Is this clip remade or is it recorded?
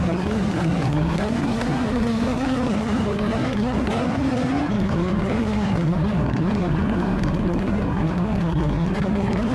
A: remade